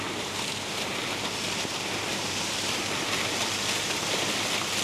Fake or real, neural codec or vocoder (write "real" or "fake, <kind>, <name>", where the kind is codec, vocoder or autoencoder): real